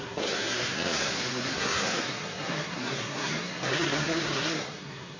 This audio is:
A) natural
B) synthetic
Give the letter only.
B